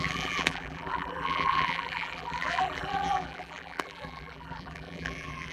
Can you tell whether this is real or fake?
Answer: fake